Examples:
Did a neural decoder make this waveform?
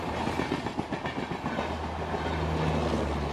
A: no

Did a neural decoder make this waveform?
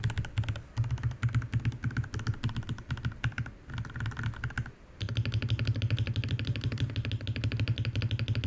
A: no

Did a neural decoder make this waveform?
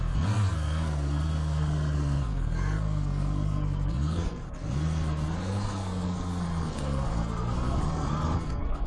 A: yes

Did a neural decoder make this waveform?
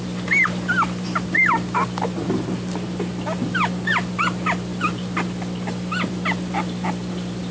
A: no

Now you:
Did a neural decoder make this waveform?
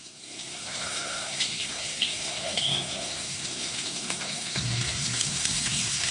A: yes